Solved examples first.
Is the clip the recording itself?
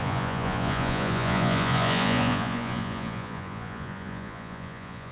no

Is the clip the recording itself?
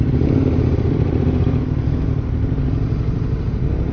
no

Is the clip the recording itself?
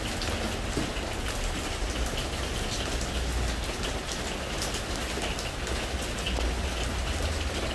yes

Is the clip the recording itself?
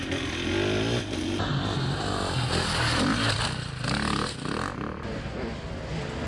yes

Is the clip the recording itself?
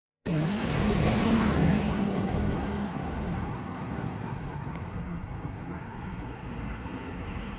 no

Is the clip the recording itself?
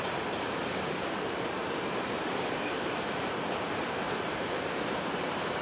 no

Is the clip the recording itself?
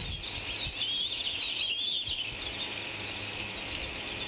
yes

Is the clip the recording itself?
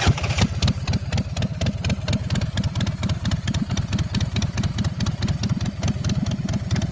yes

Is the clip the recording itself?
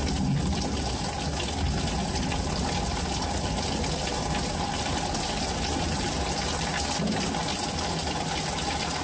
yes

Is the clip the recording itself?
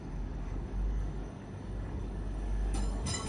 no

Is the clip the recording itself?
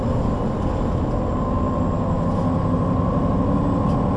yes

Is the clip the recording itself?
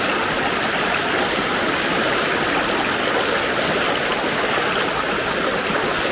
yes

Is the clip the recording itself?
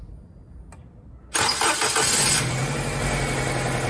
yes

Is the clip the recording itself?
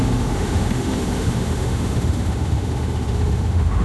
no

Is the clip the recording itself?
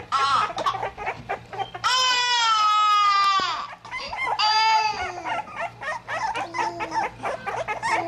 yes